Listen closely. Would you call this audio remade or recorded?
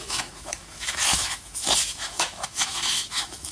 remade